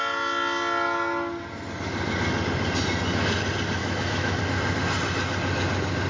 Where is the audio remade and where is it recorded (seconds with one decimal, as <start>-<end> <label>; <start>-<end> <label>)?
0.0-3.8 recorded; 3.8-4.4 remade; 4.4-6.1 recorded